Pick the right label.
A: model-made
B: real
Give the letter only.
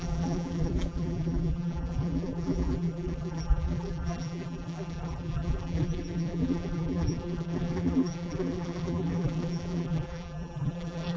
A